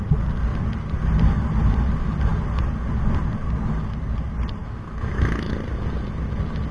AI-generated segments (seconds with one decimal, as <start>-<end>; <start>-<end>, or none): 4.6-5.5